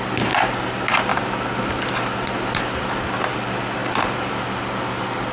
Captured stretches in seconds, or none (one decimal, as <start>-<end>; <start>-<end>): 0.0-5.3